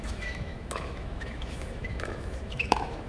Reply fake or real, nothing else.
fake